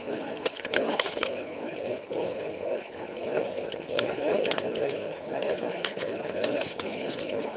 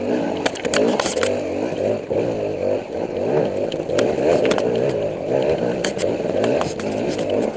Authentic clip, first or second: second